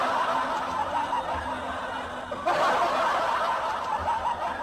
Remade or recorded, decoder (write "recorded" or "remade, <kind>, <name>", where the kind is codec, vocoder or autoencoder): recorded